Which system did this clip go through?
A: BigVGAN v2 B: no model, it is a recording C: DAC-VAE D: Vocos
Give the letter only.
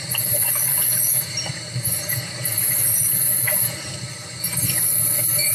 A